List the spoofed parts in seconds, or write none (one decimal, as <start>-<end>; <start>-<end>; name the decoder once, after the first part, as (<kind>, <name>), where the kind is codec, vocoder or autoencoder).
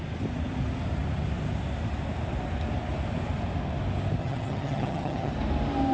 4.2-5.3 (vocoder, HiFi-GAN)